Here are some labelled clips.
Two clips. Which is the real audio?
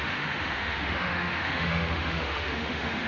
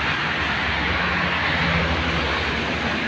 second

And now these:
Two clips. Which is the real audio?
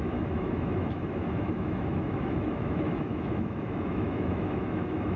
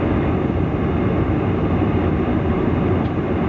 second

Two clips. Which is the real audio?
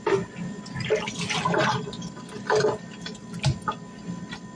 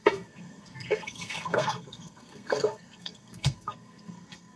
first